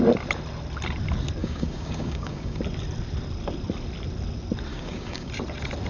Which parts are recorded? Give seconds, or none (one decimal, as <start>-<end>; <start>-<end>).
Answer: 0.0-1.4; 2.6-4.7; 5.3-5.9